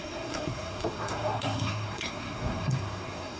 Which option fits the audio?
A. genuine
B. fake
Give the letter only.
B